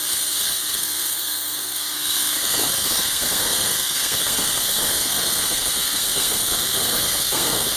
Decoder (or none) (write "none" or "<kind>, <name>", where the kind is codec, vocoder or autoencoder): codec, SNAC